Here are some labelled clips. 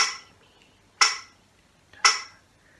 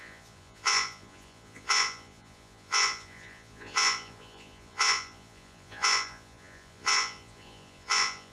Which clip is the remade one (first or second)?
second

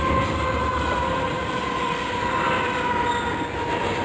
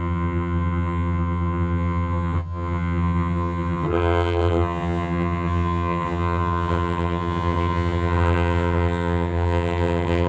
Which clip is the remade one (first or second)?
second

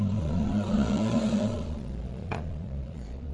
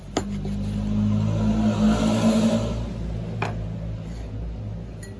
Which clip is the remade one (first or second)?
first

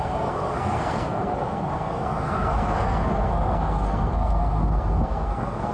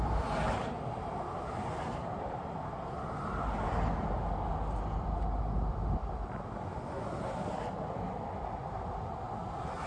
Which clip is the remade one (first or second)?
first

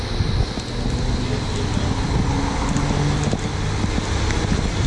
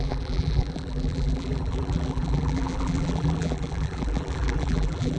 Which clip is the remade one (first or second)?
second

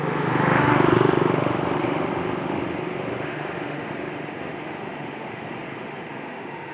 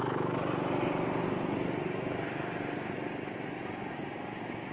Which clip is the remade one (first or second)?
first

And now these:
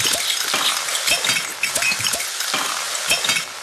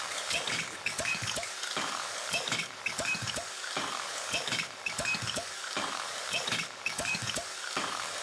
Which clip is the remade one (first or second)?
second